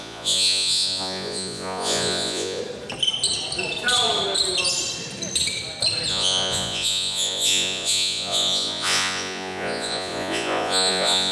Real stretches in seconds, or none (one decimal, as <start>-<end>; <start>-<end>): 2.6-6.1